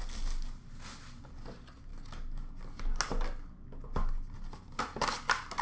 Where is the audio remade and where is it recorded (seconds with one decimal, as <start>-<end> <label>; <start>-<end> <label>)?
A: 0.0-5.6 recorded